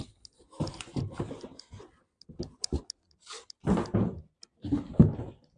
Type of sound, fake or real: real